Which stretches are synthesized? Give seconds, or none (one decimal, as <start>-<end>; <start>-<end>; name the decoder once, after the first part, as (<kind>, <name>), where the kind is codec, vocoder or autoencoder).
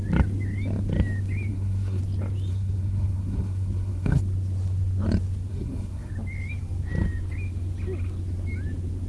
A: 1.5-2.0 (codec, SNAC); 2.5-4.2; 5.5-6.1